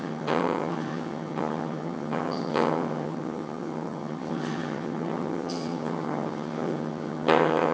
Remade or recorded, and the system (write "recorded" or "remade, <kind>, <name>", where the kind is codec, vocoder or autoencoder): remade, vocoder, HiFi-GAN